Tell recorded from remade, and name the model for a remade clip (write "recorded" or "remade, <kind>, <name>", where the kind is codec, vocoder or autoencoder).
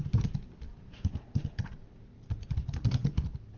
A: recorded